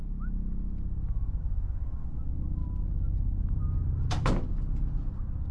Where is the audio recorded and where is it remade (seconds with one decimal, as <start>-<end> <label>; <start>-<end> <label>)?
0.0-5.5 recorded